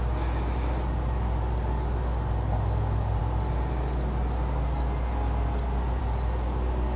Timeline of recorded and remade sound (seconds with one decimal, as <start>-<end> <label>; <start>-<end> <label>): 0.0-7.0 recorded